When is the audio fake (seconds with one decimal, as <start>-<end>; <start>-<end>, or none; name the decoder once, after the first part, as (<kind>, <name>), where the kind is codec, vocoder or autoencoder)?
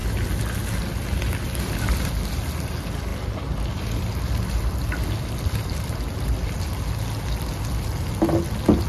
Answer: none